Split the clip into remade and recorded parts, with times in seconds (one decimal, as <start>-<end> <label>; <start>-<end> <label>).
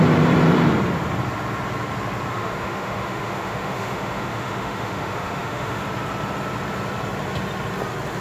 0.0-2.3 recorded; 2.3-5.8 remade; 5.8-8.2 recorded